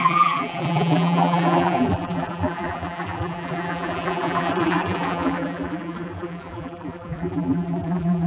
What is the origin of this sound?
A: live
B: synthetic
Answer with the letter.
B